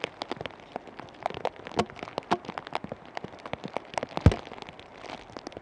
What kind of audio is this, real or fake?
real